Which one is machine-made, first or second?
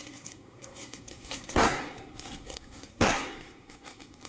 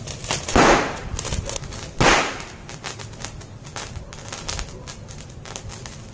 first